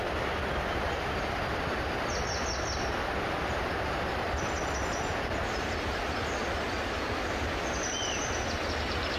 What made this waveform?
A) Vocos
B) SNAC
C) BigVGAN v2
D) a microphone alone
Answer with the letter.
D